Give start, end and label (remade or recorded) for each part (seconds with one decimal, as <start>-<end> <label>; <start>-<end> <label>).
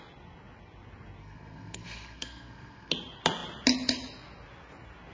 0.0-1.2 recorded; 1.2-2.9 remade; 2.9-5.1 recorded